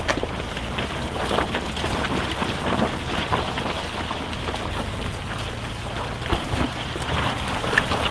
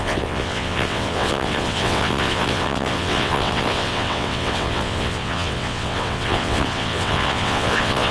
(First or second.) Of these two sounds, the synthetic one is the second